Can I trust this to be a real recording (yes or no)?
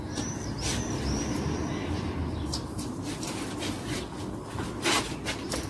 yes